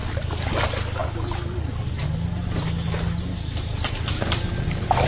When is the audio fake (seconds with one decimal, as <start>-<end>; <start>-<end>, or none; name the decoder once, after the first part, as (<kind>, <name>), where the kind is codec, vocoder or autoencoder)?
none

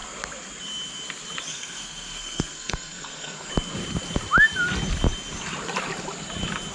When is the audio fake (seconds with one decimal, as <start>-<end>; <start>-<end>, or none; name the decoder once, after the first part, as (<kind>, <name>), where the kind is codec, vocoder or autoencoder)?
1.5-3.5 (codec, SNAC)